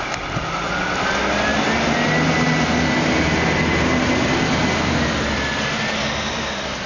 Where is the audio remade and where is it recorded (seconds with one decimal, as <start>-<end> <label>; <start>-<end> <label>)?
0.0-6.9 recorded

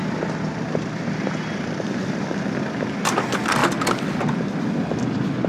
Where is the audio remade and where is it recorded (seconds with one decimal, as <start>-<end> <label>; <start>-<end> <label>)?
0.0-5.5 recorded